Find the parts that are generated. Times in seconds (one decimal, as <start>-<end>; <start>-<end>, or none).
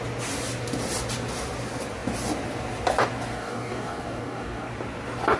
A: 3.3-4.7